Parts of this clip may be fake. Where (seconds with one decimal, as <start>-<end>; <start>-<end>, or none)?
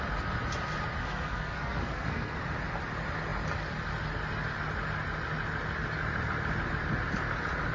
1.0-2.4